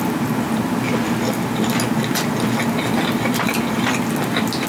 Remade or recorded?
recorded